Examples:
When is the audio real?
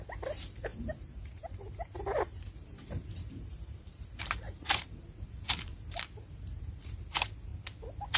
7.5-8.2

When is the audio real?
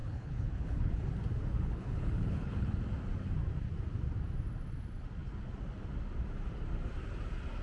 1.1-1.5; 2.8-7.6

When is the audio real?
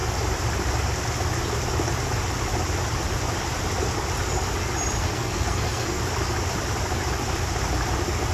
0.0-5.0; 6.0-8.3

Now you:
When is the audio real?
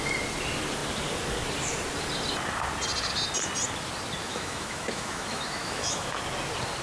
0.0-4.2; 6.2-6.8